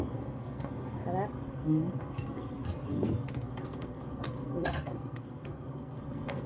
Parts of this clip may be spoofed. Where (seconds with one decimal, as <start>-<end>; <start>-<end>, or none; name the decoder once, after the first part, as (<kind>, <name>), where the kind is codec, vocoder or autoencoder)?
0.0-1.0 (codec, SNAC); 1.5-6.5